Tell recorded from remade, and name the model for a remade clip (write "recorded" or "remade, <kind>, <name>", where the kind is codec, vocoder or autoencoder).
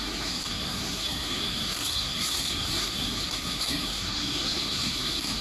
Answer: remade, codec, SNAC